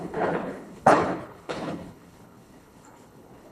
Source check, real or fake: fake